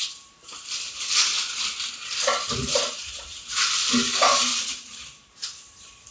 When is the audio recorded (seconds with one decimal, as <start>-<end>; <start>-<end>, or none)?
1.3-2.9